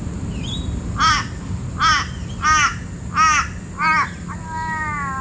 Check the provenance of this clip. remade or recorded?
recorded